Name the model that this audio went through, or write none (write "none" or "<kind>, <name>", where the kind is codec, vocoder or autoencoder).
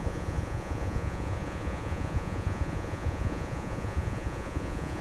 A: vocoder, Vocos